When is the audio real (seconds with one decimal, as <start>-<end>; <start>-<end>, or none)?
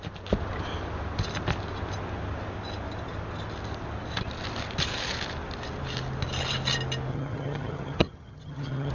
0.0-7.1